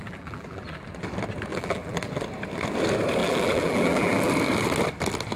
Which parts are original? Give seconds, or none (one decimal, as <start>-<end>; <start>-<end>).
0.8-1.5; 2.1-3.2; 4.3-5.4